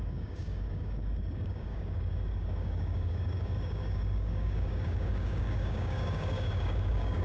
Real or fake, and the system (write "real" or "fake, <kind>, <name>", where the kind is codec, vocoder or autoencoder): fake, codec, DAC